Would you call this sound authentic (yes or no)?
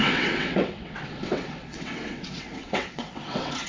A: no